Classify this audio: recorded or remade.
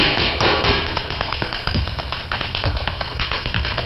remade